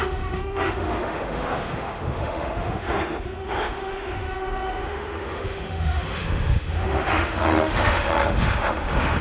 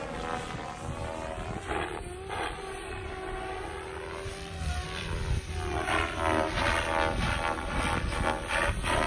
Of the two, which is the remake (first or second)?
first